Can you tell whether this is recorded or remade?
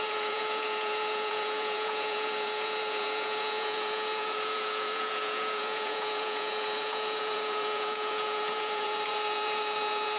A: remade